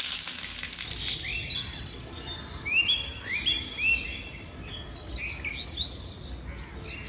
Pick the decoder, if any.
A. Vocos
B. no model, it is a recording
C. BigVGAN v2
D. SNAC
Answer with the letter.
B